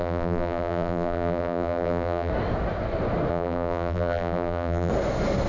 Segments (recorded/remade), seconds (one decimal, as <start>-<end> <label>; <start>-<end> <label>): 0.0-2.3 remade; 2.3-3.3 recorded; 3.3-4.9 remade; 4.9-5.5 recorded